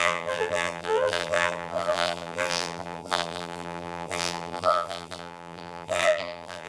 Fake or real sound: fake